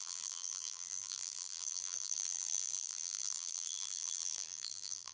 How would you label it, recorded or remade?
remade